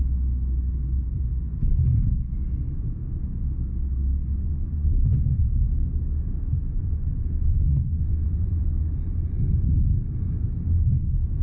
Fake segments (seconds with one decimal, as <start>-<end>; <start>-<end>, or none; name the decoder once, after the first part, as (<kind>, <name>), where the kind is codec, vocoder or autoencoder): 4.3-5.4 (vocoder, Vocos); 6.8-8.6